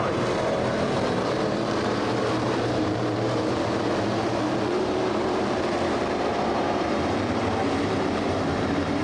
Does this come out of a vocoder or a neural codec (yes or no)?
yes